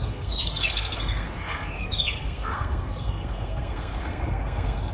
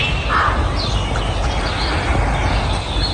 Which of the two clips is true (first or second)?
second